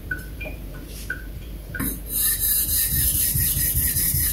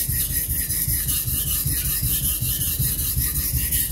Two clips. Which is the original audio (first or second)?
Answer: second